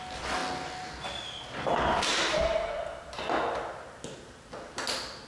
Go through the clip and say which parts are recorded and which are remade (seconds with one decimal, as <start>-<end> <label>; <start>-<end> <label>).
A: 0.0-5.3 recorded